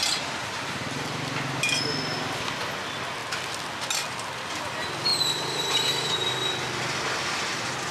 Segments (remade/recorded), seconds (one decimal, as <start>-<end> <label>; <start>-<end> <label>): 0.0-0.4 recorded; 0.4-1.2 remade; 1.2-5.1 recorded; 5.1-6.1 remade; 6.1-7.9 recorded